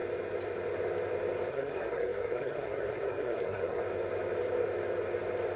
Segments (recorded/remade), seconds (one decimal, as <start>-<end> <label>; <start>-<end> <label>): 0.0-1.5 recorded; 1.5-3.8 remade; 3.8-5.6 recorded